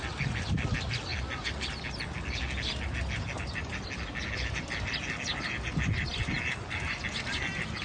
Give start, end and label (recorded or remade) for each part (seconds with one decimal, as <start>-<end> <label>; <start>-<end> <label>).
0.0-7.8 recorded